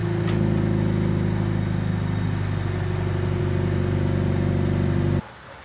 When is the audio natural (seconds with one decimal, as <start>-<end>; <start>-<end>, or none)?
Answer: 0.0-5.6